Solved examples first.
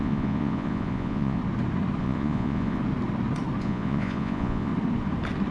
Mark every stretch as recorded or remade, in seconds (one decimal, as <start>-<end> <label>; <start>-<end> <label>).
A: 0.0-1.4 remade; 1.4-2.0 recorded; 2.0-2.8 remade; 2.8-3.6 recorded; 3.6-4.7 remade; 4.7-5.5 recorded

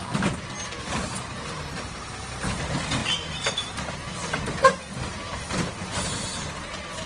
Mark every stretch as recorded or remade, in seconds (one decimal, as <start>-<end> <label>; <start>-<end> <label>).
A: 0.0-7.1 recorded

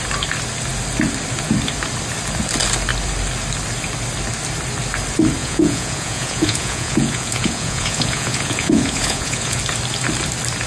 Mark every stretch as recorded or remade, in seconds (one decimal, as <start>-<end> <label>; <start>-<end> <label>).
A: 0.0-5.4 recorded; 5.4-9.6 remade; 9.6-10.7 recorded